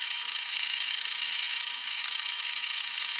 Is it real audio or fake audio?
fake